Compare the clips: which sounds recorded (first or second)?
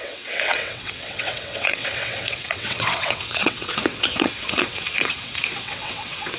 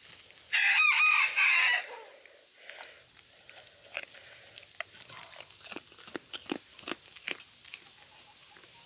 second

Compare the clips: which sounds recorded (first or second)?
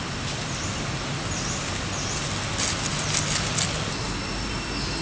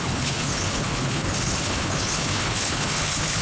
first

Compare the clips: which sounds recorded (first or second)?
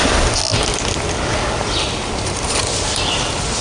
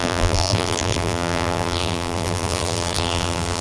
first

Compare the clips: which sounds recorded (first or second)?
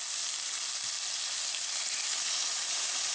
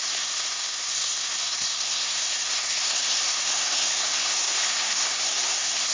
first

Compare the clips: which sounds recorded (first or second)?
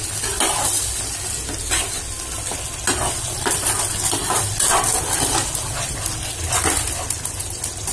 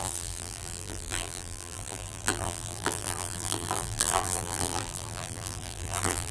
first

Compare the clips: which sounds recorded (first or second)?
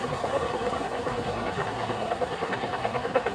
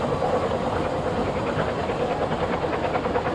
second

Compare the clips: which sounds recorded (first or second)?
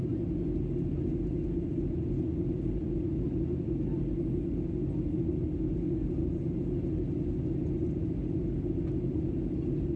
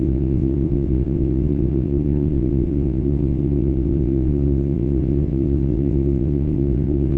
first